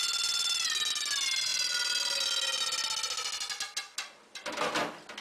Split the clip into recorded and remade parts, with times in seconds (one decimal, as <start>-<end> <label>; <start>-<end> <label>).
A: 0.0-5.2 recorded